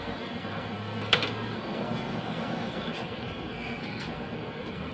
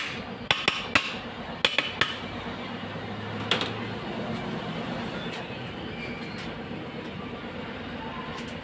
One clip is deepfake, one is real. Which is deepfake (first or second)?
first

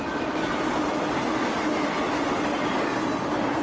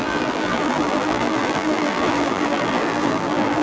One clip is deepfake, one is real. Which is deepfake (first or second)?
second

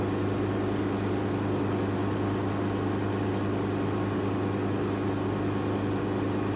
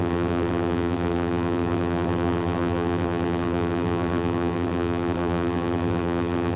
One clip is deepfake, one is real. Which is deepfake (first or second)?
second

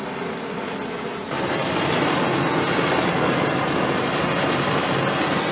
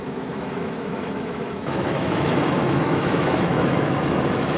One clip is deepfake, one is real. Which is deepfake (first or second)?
second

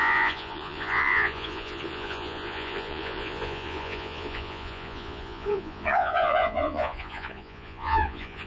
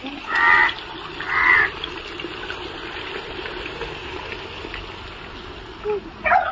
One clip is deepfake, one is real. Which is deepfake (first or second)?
first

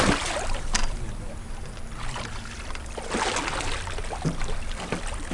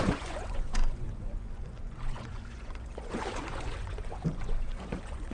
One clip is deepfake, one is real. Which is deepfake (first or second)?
second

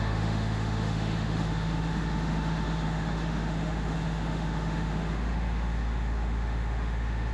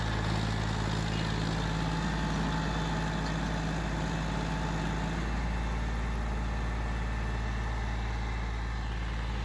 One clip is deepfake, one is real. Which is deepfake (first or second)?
first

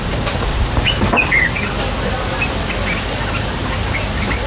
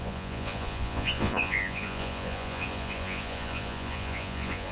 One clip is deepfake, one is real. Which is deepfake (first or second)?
second